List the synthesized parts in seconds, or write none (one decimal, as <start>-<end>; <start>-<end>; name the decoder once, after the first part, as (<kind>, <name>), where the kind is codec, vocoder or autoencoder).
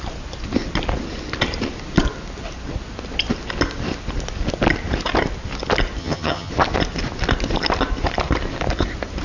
6.0-6.5 (vocoder, HiFi-GAN)